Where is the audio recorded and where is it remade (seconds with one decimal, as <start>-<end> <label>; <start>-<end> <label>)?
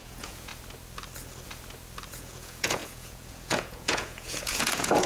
0.0-0.5 remade; 0.5-2.1 recorded; 2.1-5.1 remade